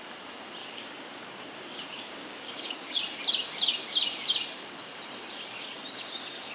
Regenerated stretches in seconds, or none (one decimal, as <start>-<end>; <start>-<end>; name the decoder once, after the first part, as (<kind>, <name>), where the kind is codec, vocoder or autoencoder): 0.6-3.0 (codec, DAC)